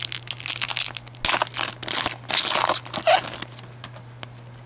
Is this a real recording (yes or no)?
yes